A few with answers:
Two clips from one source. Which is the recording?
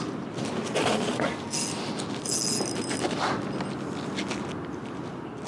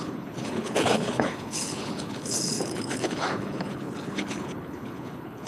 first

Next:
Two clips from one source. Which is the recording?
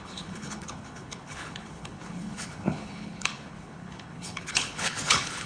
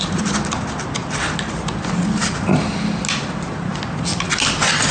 second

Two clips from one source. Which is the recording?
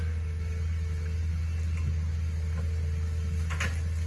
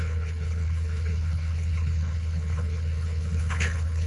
first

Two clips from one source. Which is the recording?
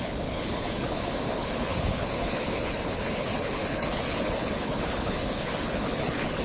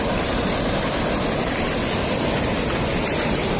second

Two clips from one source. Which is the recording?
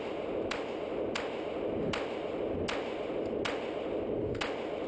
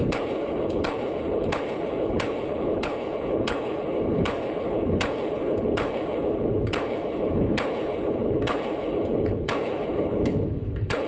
first